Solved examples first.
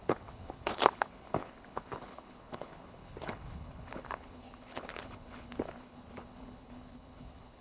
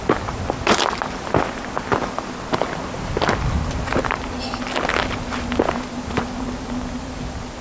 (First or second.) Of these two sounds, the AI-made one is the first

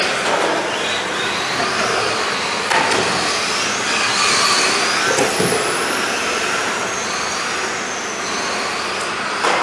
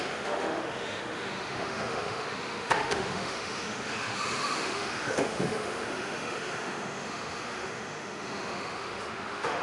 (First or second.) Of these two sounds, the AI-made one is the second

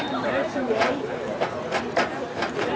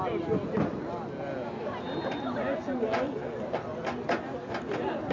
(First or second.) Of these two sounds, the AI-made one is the first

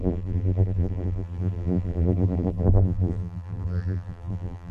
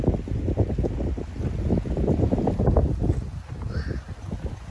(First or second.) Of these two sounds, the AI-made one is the first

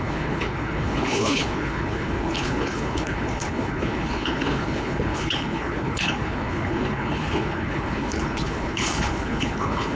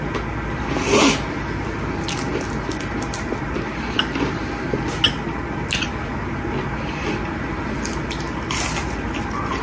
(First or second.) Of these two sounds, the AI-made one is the first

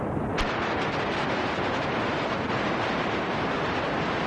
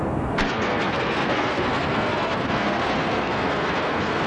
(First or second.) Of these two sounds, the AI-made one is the second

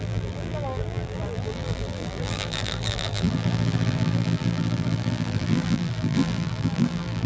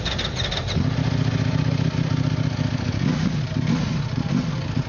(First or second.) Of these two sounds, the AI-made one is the first